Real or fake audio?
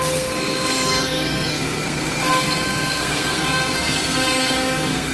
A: fake